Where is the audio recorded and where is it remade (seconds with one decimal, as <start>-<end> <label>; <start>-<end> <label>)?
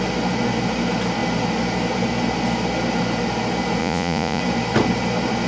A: 0.0-3.8 recorded; 3.8-4.4 remade; 4.4-5.5 recorded